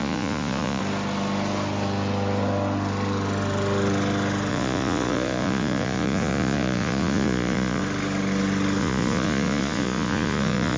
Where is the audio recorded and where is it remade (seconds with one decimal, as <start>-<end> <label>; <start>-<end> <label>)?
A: 0.0-0.8 remade; 0.8-4.5 recorded; 4.5-7.8 remade; 7.8-8.8 recorded; 8.8-10.8 remade